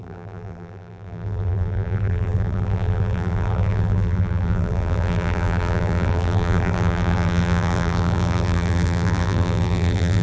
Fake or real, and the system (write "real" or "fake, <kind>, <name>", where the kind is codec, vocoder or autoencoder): fake, vocoder, BigVGAN v2